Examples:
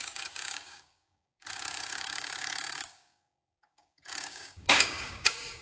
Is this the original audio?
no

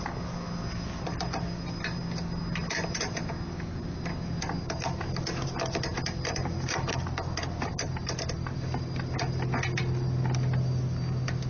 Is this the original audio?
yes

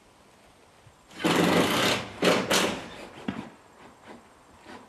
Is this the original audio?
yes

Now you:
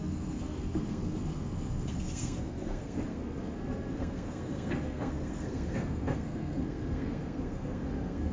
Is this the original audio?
no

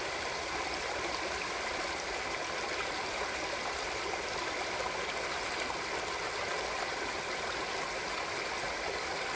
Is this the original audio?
yes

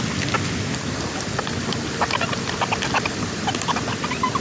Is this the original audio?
yes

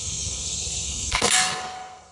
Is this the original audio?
no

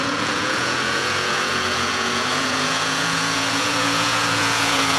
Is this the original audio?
no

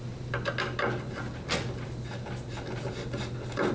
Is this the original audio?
yes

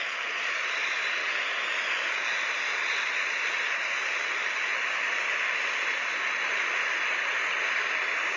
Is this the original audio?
yes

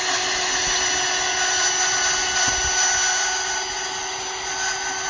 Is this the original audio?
yes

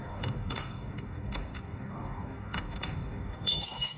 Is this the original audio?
no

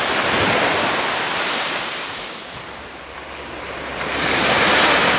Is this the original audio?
yes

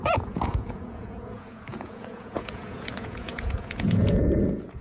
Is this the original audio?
no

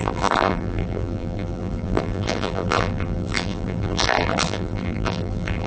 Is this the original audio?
no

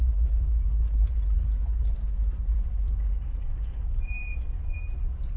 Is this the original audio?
no